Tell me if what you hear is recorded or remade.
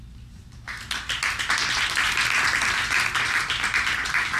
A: recorded